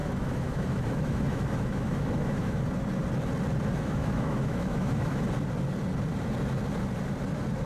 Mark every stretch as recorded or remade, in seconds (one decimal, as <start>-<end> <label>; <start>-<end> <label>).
0.0-2.6 remade; 2.6-3.7 recorded; 3.7-5.2 remade; 5.2-7.7 recorded